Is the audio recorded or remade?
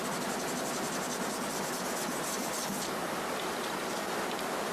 recorded